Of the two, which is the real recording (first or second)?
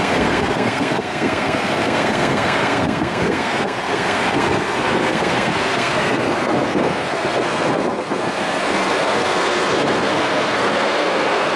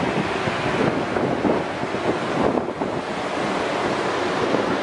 second